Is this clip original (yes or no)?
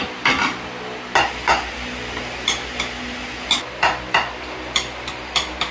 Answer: yes